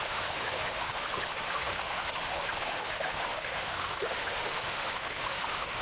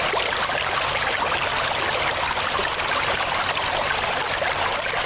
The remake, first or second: first